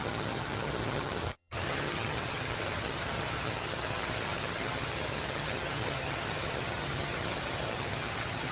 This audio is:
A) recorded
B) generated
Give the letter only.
B